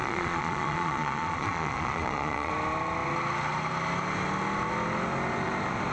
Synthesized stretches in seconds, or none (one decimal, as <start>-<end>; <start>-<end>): 0.0-2.5